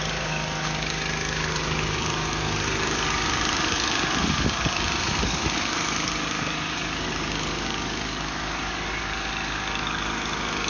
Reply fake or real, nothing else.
fake